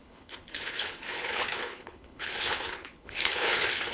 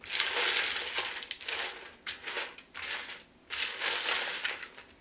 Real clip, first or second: second